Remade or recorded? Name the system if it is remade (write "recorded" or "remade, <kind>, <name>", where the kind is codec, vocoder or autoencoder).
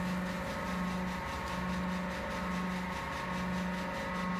recorded